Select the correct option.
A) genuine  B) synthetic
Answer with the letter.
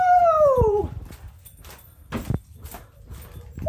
A